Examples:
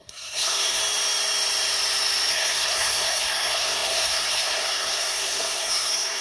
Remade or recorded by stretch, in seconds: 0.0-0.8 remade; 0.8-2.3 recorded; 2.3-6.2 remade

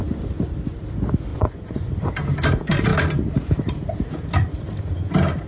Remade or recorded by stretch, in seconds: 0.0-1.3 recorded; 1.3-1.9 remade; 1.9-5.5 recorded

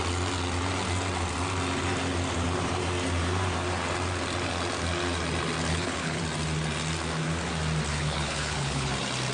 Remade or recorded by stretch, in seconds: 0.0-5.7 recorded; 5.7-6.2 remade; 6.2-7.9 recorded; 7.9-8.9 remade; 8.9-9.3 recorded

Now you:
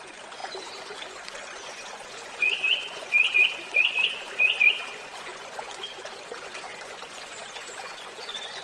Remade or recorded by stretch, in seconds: 0.0-8.6 remade

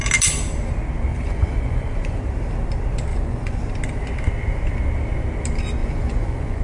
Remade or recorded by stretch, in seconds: 0.0-1.1 recorded; 1.1-2.2 remade; 2.2-3.1 recorded; 3.1-3.6 remade; 3.6-5.8 recorded; 5.8-6.6 remade